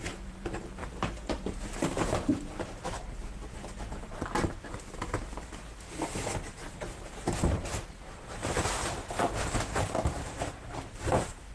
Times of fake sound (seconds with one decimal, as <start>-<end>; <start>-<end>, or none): 0.0-0.8; 1.9-5.6; 6.8-11.5